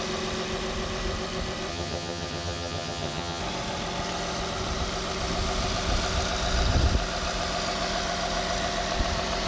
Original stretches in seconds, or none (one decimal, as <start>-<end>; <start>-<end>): 0.0-1.7; 3.4-9.5